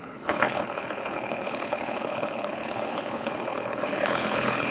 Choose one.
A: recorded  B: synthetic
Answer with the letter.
B